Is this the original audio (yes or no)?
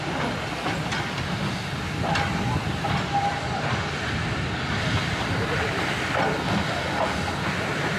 yes